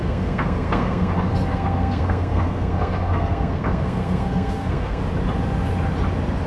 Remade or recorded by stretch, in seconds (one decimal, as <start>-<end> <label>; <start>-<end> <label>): 0.0-1.1 remade; 1.1-1.5 recorded; 1.5-5.0 remade; 5.0-6.5 recorded